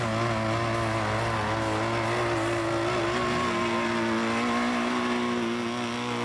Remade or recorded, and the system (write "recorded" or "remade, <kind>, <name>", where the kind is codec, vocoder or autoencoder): recorded